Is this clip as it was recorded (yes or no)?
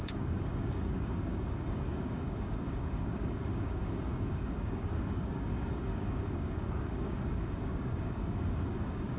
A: no